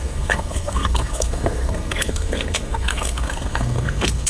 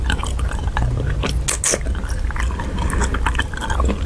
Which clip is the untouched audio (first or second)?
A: second